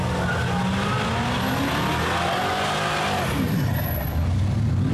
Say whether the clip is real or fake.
real